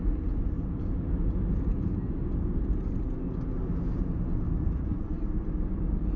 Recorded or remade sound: recorded